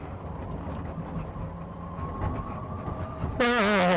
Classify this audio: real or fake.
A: real